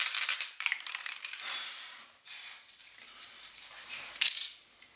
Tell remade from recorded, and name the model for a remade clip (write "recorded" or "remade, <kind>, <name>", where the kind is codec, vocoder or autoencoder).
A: remade, vocoder, BigVGAN v2